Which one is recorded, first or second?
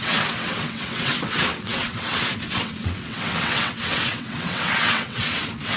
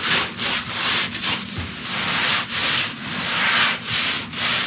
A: second